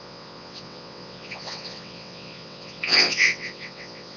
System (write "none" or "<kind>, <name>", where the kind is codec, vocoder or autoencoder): vocoder, WaveNeXt